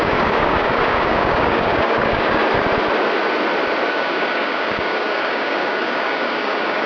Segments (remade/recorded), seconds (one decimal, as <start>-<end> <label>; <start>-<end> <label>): 0.0-2.4 remade; 2.4-3.9 recorded; 3.9-6.9 remade